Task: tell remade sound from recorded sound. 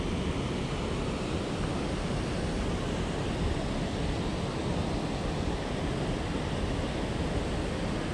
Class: recorded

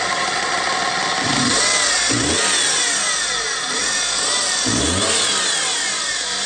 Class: recorded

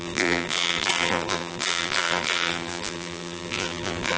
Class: remade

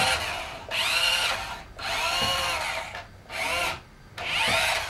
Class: recorded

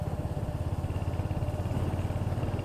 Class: recorded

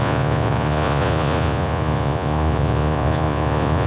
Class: remade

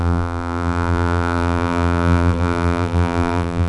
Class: remade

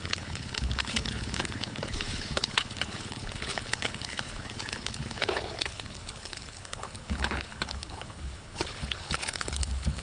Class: remade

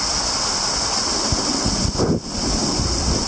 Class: recorded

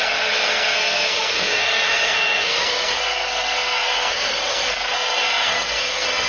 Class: remade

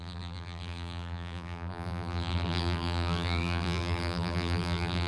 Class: remade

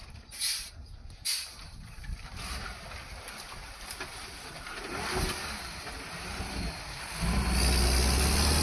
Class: recorded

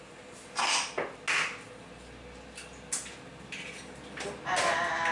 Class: recorded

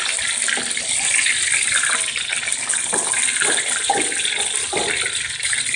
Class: recorded